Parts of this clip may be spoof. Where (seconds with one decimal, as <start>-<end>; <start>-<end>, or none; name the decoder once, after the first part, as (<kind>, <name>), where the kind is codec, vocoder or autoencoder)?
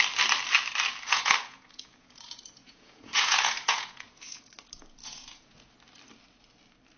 1.1-4.4 (vocoder, Vocos); 5.0-5.7